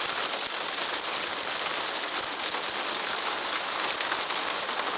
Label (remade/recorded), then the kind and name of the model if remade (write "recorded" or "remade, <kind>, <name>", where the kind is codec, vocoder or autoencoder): recorded